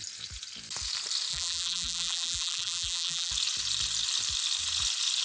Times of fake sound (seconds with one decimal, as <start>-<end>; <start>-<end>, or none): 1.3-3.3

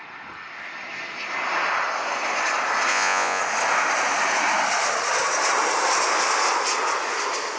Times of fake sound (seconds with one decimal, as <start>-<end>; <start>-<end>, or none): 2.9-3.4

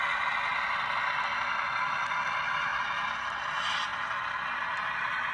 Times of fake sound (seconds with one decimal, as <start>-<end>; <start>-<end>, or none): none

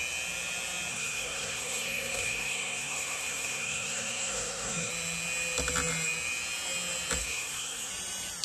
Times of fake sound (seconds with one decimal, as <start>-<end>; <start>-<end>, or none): 0.9-4.9; 7.2-7.9

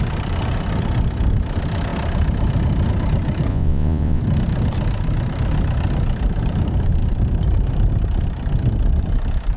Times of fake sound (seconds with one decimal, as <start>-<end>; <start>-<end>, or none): 3.5-4.2